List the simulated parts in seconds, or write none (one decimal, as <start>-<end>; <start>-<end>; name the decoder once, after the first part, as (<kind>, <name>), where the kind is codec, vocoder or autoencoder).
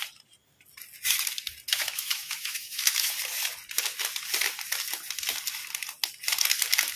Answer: 1.7-3.1 (autoencoder, DAC-VAE)